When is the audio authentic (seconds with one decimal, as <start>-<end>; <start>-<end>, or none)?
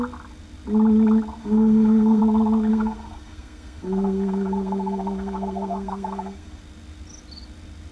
0.0-1.4; 2.2-2.7; 6.6-7.9